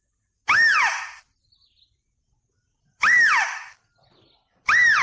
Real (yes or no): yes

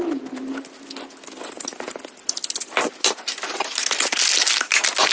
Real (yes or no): yes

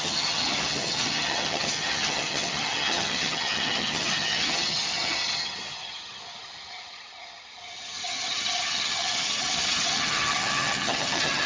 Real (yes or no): no